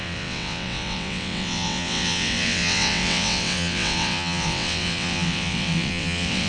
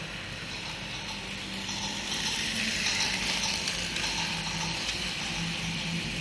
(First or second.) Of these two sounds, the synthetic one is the first